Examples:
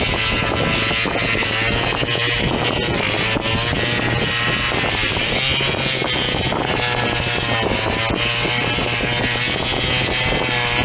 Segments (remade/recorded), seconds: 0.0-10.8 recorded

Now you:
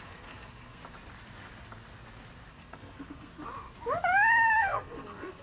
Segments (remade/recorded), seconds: 0.0-0.8 remade; 0.8-2.5 recorded; 2.5-3.3 remade; 3.3-4.5 recorded; 4.5-5.4 remade

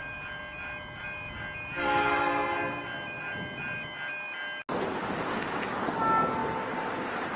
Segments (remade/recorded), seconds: 0.0-7.4 recorded

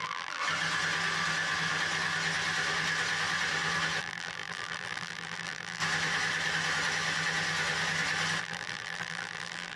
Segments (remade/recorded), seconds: 0.0-0.4 remade; 0.4-4.0 recorded; 4.0-5.8 remade; 5.8-8.4 recorded; 8.4-9.8 remade

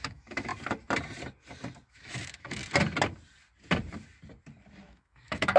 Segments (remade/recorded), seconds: 0.0-0.5 remade; 0.5-1.9 recorded; 1.9-2.6 remade; 2.6-4.9 recorded; 4.9-5.6 remade

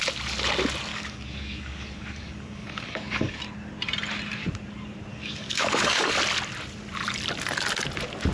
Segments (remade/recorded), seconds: 0.0-0.9 recorded; 0.9-3.4 remade; 3.4-5.1 recorded; 5.1-6.1 remade; 6.1-8.3 recorded